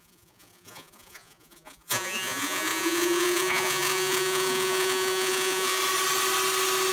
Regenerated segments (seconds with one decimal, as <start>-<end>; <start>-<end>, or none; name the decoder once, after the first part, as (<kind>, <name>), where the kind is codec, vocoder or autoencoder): 0.0-5.8 (vocoder, Vocos)